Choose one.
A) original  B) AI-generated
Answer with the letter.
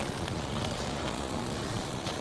B